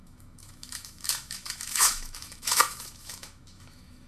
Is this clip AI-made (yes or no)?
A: yes